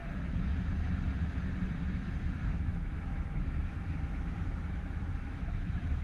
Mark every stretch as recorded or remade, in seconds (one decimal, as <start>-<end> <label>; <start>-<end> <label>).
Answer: 0.0-1.8 recorded; 1.8-6.0 remade